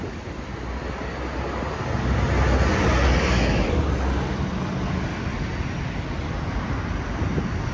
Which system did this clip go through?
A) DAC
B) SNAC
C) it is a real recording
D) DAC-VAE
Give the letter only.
C